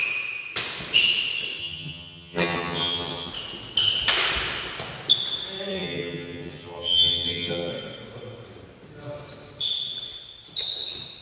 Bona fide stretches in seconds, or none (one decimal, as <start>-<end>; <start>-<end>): 0.0-1.6; 3.3-5.7; 7.7-11.2